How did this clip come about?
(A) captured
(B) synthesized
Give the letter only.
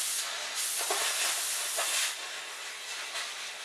A